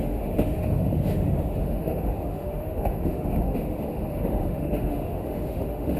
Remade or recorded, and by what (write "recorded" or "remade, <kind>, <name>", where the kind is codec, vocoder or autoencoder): remade, autoencoder, DAC-VAE